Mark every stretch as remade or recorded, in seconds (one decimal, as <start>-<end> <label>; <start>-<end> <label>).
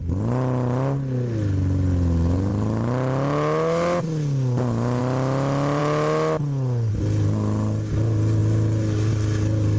0.0-9.8 recorded